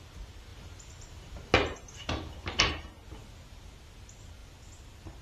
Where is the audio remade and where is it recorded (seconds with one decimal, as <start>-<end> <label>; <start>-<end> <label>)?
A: 0.0-5.2 recorded